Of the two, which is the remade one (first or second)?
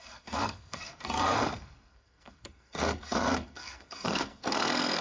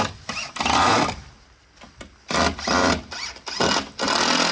first